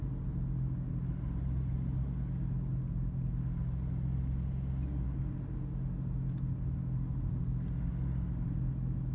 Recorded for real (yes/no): yes